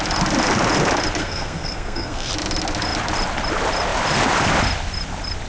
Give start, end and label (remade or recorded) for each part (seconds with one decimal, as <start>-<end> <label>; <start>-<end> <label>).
0.0-1.2 recorded; 1.2-2.3 remade; 2.3-5.5 recorded